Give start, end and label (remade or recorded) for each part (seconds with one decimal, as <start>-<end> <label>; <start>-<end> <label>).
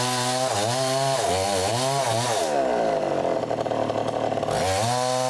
0.0-5.3 recorded